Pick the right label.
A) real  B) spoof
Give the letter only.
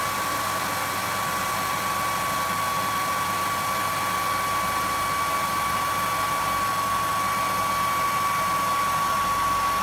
A